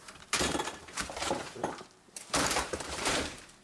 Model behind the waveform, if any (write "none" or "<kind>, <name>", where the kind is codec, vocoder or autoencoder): vocoder, BigVGAN v2